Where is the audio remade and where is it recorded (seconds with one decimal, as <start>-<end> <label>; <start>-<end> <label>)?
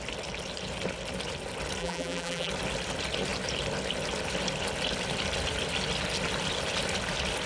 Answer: 0.0-1.8 recorded; 1.8-2.5 remade; 2.5-7.5 recorded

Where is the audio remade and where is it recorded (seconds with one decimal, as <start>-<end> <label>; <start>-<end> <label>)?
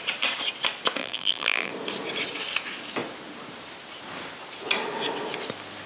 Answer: 0.0-1.0 recorded; 1.0-1.7 remade; 1.7-5.9 recorded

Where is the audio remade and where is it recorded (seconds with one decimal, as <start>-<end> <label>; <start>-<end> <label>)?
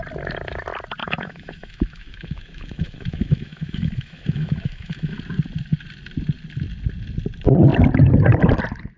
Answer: 0.0-1.0 recorded; 1.0-5.2 remade; 5.2-9.0 recorded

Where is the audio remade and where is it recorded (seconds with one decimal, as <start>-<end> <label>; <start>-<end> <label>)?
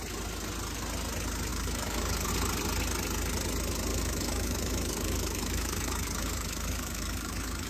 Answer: 0.0-1.5 recorded; 1.5-2.3 remade; 2.3-3.9 recorded; 3.9-7.7 remade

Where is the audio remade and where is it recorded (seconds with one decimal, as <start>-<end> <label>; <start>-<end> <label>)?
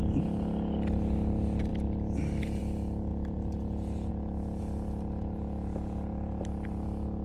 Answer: 0.0-3.1 recorded; 3.1-4.1 remade; 4.1-7.2 recorded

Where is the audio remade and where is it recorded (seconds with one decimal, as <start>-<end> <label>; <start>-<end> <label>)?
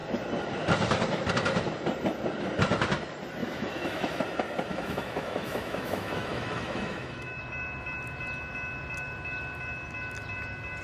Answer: 0.0-3.4 recorded; 3.4-4.2 remade; 4.2-4.7 recorded; 4.7-7.4 remade; 7.4-10.8 recorded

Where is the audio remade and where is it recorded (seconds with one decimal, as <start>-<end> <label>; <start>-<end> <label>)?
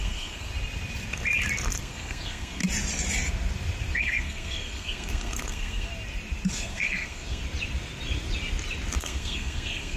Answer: 0.0-0.5 remade; 0.5-1.8 recorded; 1.8-2.6 remade; 2.6-4.0 recorded; 4.0-5.9 remade; 5.9-6.5 recorded; 6.5-7.4 remade; 7.4-9.0 recorded; 9.0-10.0 remade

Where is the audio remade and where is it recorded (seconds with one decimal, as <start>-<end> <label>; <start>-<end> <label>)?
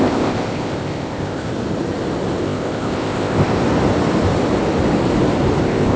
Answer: 0.0-1.5 remade; 1.5-2.4 recorded; 2.4-3.6 remade; 3.6-5.6 recorded; 5.6-6.0 remade